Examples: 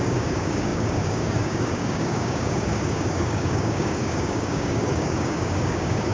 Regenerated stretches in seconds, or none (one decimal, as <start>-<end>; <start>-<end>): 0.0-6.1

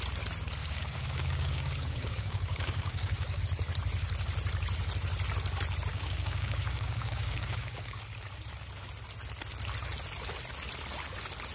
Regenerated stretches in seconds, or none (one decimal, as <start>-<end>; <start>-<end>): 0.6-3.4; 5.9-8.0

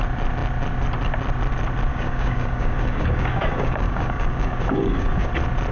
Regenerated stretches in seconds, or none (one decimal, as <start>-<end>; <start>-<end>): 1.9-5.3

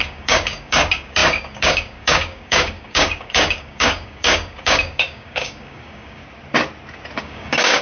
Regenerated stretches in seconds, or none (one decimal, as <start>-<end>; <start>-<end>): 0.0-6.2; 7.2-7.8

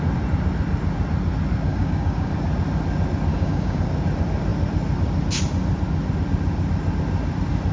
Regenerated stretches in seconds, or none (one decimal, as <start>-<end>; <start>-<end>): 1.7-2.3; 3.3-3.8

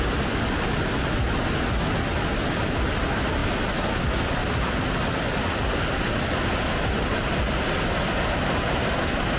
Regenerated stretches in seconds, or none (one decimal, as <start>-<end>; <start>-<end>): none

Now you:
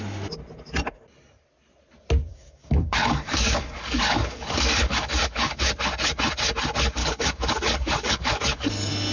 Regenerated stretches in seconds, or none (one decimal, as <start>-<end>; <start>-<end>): 2.3-5.6; 7.0-8.7

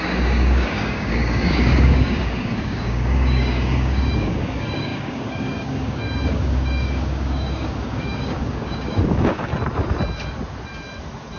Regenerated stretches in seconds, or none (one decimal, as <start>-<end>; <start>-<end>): 0.0-9.5